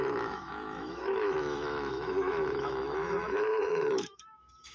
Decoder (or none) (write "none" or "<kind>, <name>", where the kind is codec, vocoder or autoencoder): autoencoder, DAC-VAE